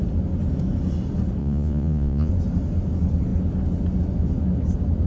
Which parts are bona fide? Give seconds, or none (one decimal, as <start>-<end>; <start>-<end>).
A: 0.0-1.4; 2.3-5.1